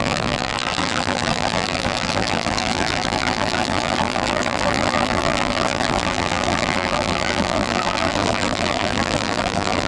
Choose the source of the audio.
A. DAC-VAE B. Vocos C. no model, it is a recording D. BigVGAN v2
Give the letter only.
D